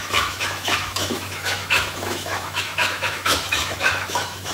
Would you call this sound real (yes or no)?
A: no